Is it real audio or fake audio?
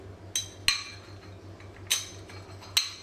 real